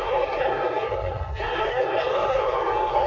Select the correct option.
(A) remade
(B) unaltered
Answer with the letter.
A